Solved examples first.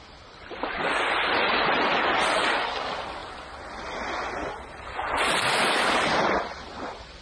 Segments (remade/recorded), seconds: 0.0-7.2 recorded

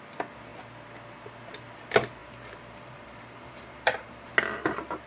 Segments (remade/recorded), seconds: 0.0-2.2 recorded; 2.2-4.3 remade; 4.3-5.1 recorded

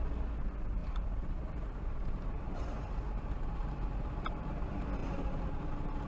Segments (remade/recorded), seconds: 0.0-0.8 recorded; 0.8-4.5 remade; 4.5-5.0 recorded; 5.0-6.1 remade

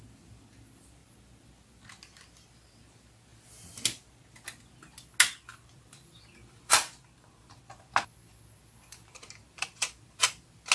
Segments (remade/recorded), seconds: 0.0-5.5 recorded; 5.5-7.6 remade; 7.6-9.4 recorded; 9.4-10.7 remade